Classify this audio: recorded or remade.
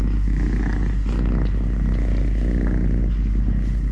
recorded